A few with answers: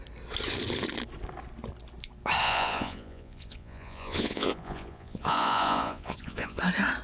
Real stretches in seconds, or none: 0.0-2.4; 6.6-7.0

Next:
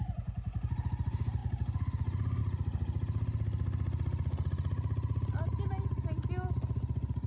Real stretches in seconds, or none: 0.0-7.3